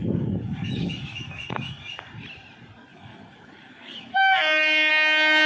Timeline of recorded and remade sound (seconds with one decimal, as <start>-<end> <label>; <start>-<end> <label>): 0.0-1.9 remade; 1.9-2.9 recorded; 2.9-4.9 remade; 4.9-5.5 recorded